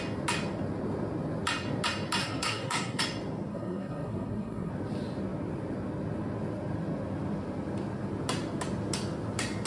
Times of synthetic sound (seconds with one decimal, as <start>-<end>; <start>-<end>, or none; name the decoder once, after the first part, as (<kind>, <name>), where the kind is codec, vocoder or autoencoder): 2.2-3.0 (codec, SNAC); 3.5-4.7